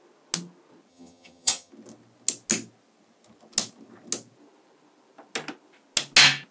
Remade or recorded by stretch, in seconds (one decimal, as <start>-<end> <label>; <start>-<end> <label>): 0.0-0.9 recorded; 0.9-1.7 remade; 1.7-6.5 recorded